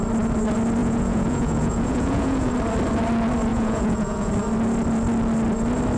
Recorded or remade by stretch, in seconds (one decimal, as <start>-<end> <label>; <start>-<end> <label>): 0.0-0.8 recorded; 0.8-2.5 remade; 2.5-3.5 recorded; 3.5-4.3 remade; 4.3-6.0 recorded